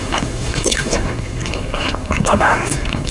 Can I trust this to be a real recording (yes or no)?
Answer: no